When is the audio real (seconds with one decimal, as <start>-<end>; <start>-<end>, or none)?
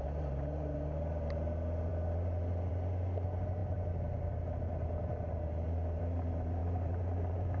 0.0-7.6